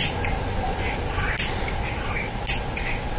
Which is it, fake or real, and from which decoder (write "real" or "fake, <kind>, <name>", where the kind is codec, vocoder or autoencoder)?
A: real